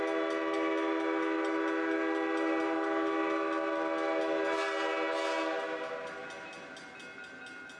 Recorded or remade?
recorded